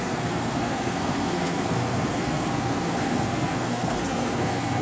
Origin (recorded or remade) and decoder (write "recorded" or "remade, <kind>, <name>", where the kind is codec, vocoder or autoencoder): remade, codec, SNAC